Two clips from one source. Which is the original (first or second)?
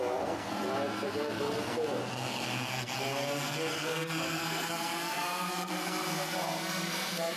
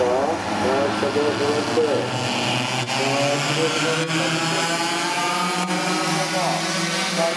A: second